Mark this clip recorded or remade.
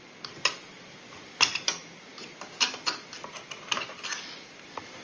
recorded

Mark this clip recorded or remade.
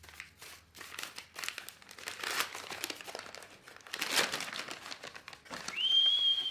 recorded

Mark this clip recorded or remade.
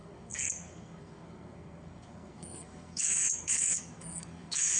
remade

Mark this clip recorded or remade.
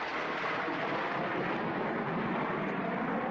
recorded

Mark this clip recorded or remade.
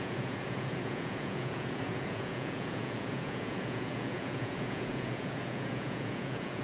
remade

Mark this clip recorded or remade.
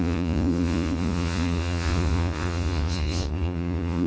remade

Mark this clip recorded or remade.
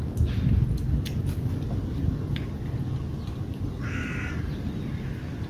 recorded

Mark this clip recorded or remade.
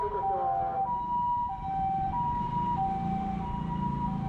recorded